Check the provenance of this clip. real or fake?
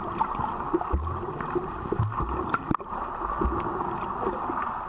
real